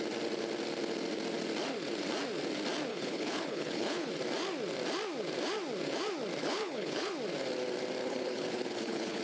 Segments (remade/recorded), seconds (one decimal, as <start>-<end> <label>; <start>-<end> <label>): 0.0-2.9 recorded; 2.9-4.1 remade; 4.1-6.4 recorded; 6.4-7.1 remade; 7.1-8.0 recorded; 8.0-9.2 remade